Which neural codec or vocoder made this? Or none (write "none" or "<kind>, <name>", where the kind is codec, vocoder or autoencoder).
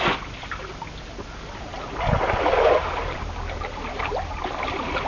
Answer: none